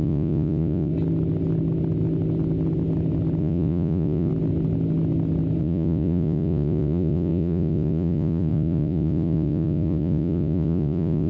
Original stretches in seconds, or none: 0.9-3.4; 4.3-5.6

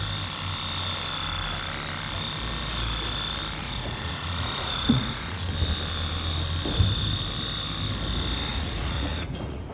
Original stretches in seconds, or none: 0.0-3.6; 5.5-8.5

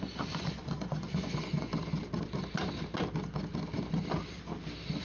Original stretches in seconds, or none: 1.7-5.0

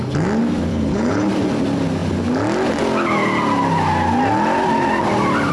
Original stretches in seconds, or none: 0.0-0.7; 1.3-5.5

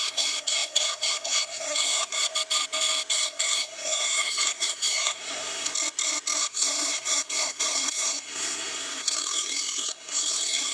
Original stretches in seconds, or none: 2.3-3.1; 5.7-6.4

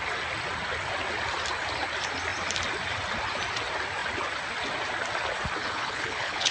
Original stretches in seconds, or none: 0.0-5.6